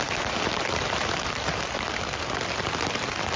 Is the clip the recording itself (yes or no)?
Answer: yes